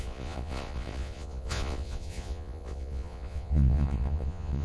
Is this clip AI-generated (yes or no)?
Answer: yes